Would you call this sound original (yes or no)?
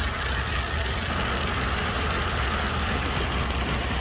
yes